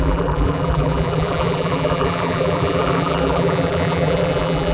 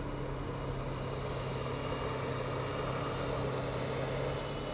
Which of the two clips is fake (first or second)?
first